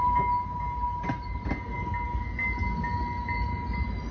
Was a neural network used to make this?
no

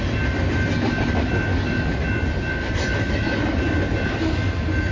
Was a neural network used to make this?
no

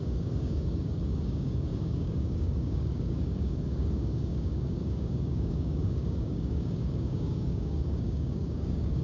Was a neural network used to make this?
yes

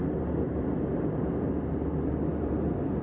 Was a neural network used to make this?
no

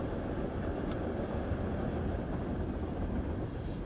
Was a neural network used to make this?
no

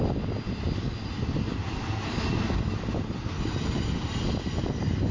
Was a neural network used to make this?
no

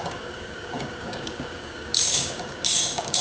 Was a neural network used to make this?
yes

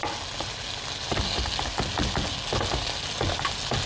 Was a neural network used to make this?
no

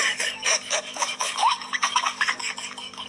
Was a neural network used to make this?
yes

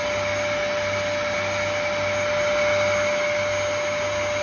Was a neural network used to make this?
no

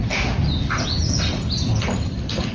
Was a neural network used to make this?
no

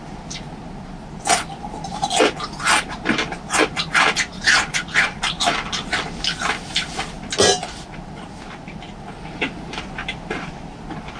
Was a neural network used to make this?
no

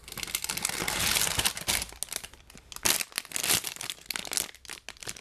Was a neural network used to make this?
no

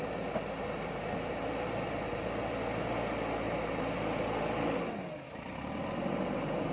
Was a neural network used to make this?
no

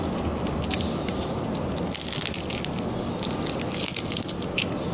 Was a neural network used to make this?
no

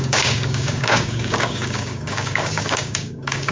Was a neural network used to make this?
yes